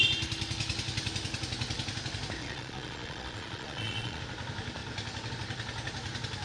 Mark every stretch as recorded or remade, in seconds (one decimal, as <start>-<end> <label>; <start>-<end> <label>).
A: 0.0-2.4 recorded; 2.4-4.2 remade; 4.2-6.4 recorded